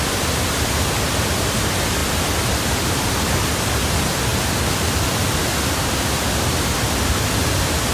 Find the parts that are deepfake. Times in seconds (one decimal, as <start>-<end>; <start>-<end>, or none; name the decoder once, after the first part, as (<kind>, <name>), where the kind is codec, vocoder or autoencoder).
none